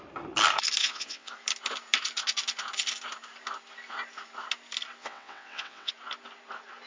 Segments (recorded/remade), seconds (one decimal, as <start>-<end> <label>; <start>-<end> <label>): 0.0-0.8 recorded; 0.8-1.3 remade; 1.3-5.0 recorded; 5.0-5.9 remade; 5.9-6.9 recorded

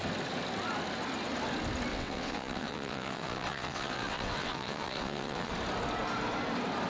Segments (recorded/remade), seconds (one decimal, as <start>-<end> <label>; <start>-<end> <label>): 0.0-1.9 recorded; 1.9-5.5 remade; 5.5-6.9 recorded

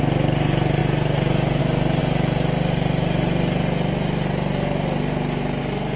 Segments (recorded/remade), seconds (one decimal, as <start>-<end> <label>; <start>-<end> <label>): 0.0-6.0 recorded

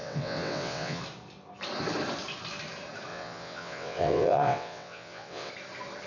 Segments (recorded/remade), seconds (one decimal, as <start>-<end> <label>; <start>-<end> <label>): 0.0-1.0 remade; 1.0-3.1 recorded; 3.1-5.5 remade; 5.5-6.1 recorded

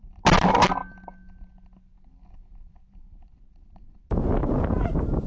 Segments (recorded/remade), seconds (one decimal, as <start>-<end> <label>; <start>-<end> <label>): 0.0-5.3 recorded